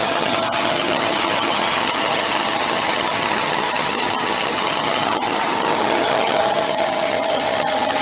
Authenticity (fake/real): fake